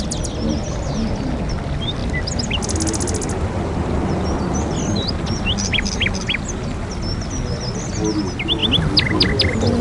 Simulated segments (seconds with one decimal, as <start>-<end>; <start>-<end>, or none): none

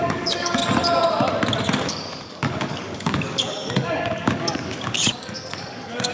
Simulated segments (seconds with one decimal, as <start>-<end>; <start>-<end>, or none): 0.0-0.6; 1.6-6.1

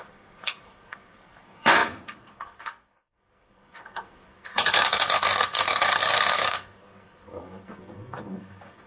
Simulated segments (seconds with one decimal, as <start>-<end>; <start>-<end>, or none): 0.0-8.9

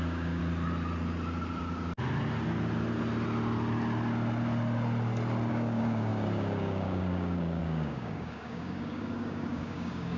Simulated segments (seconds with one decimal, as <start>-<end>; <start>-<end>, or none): 0.0-0.4; 5.5-10.2